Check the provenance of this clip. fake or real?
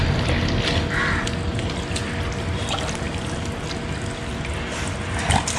real